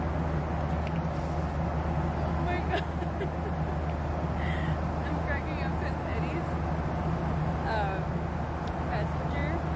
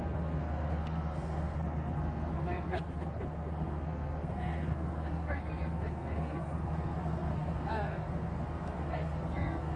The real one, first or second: first